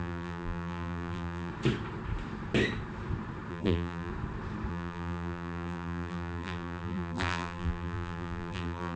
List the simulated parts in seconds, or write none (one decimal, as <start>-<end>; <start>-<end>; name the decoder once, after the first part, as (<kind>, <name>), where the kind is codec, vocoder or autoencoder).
0.0-1.5 (vocoder, BigVGAN v2); 3.5-4.1; 4.7-9.0